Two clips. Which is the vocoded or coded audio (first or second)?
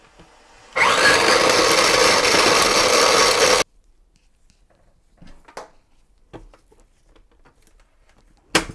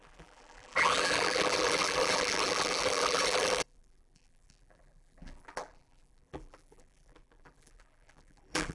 second